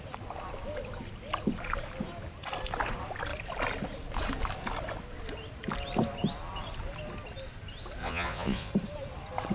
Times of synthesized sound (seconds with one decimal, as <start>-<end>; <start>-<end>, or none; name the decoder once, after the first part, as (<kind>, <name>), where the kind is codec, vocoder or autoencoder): 8.0-8.7 (vocoder, Vocos)